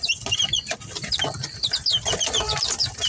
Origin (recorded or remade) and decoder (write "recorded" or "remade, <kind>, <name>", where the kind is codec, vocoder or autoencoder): recorded